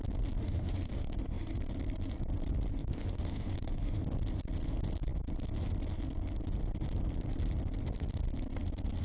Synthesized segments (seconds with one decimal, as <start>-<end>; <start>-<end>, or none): 0.4-1.6; 2.7-4.0